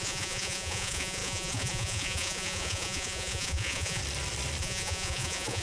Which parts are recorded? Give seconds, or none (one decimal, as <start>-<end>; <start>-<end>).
4.0-4.6